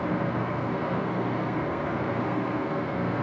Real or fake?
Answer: fake